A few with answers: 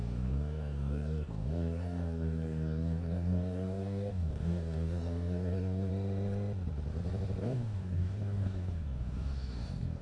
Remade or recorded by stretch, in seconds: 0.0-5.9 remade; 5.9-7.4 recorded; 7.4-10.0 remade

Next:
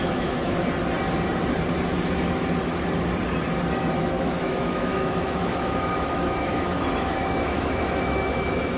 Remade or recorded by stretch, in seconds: 0.0-0.6 remade; 0.6-4.0 recorded; 4.0-8.8 remade

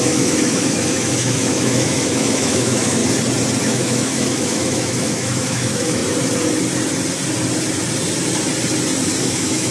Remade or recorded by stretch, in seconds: 0.0-3.0 remade; 3.0-3.6 recorded; 3.6-6.0 remade; 6.0-9.2 recorded; 9.2-9.7 remade

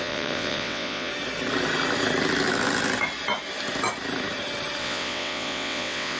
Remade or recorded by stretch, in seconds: 0.0-1.1 remade; 1.1-4.8 recorded; 4.8-6.2 remade